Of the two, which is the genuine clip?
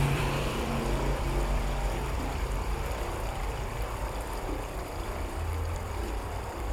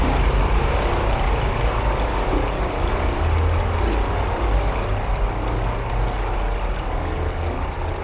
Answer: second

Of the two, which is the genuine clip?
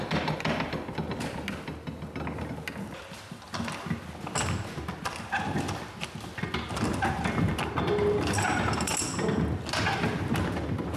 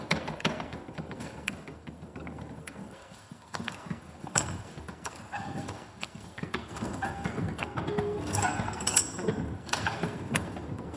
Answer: first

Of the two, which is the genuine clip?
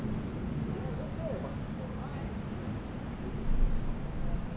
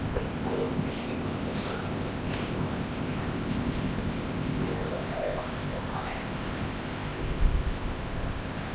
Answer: first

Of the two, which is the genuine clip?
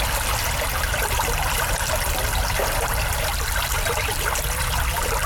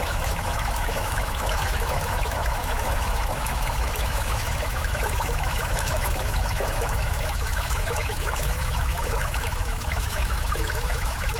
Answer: first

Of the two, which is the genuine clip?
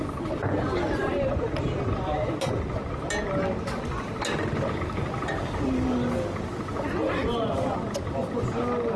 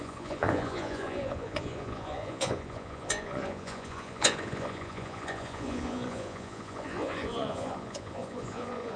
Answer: first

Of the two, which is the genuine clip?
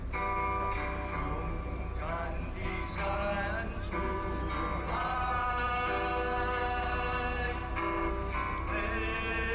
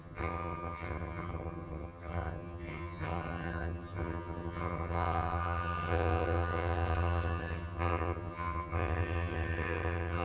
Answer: first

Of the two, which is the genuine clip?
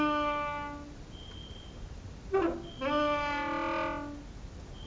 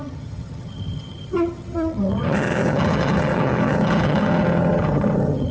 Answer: first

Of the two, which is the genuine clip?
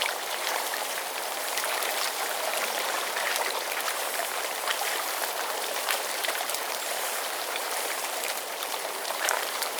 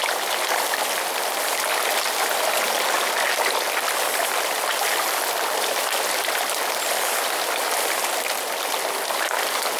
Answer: second